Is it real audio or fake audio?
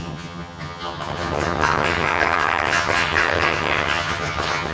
fake